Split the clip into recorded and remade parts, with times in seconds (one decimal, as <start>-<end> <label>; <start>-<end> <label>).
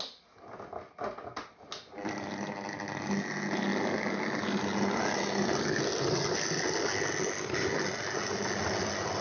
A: 0.0-9.2 recorded